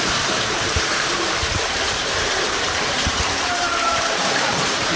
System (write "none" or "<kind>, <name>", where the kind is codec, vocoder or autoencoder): vocoder, BigVGAN v2